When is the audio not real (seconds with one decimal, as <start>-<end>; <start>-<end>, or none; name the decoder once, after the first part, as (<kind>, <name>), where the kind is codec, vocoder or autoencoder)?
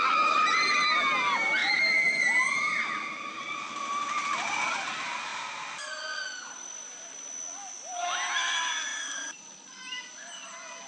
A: 1.6-3.4 (vocoder, BigVGAN v2); 8.9-9.4